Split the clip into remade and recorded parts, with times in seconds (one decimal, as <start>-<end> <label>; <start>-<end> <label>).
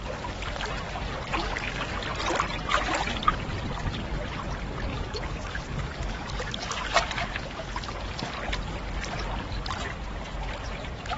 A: 0.0-1.4 recorded; 1.4-1.9 remade; 1.9-4.9 recorded; 4.9-8.3 remade; 8.3-11.2 recorded